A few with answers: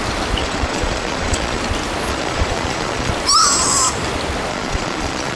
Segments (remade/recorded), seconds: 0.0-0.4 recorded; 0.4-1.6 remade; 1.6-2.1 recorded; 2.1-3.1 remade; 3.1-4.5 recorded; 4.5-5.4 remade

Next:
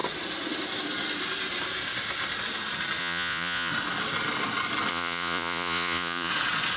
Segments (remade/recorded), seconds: 0.0-3.0 recorded; 3.0-3.7 remade; 3.7-4.9 recorded; 4.9-6.3 remade; 6.3-6.8 recorded

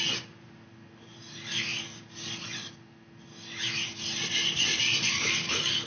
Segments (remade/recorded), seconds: 0.0-5.9 recorded

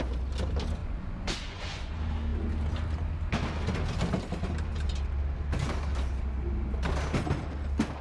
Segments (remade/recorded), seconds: 0.0-0.8 recorded; 0.8-1.9 remade; 1.9-8.0 recorded

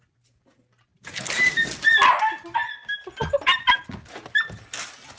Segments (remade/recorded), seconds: 0.0-5.2 recorded

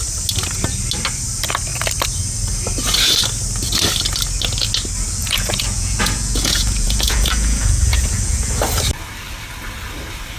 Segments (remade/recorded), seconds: 0.0-5.2 recorded; 5.2-8.6 remade; 8.6-10.4 recorded

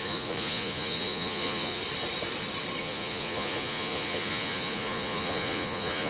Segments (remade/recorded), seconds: 0.0-1.8 remade; 1.8-2.8 recorded; 2.8-6.1 remade